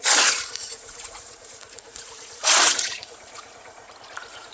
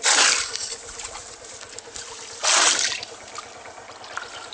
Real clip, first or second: second